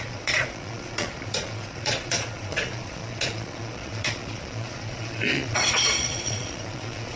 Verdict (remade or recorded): remade